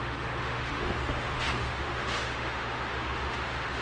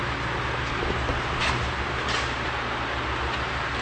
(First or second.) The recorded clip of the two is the second